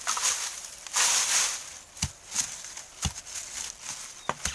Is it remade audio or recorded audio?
recorded